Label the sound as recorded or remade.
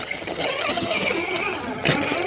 remade